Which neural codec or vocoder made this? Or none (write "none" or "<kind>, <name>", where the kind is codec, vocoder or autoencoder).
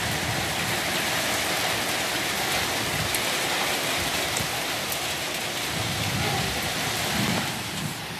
none